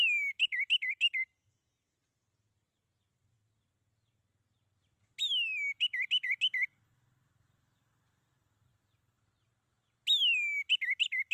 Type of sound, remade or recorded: recorded